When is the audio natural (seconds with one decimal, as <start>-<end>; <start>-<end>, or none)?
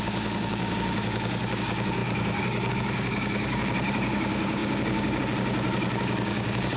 none